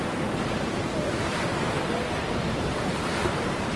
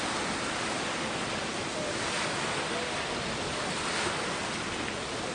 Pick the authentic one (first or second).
second